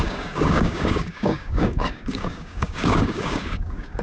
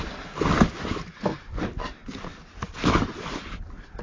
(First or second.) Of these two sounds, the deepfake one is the first